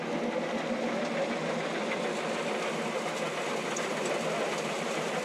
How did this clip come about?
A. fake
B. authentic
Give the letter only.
B